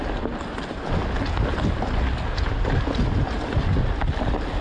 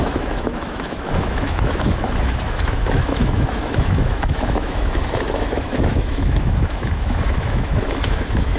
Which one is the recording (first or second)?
first